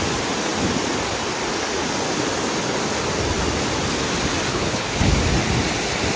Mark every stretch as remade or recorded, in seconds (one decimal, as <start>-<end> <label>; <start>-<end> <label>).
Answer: 0.0-4.5 recorded; 4.5-5.1 remade; 5.1-6.2 recorded